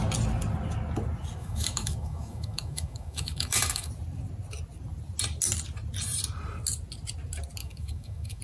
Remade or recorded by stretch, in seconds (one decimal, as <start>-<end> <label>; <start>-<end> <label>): 0.0-1.4 recorded; 1.4-3.9 remade; 3.9-7.6 recorded; 7.6-8.4 remade